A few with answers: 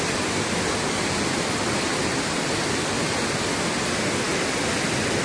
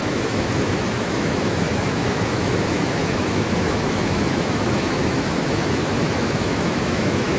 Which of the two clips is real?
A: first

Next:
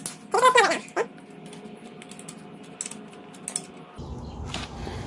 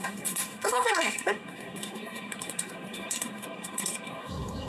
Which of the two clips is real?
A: first